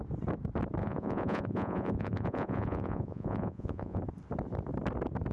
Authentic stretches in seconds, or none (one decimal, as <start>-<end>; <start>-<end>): 0.0-0.8; 4.0-5.3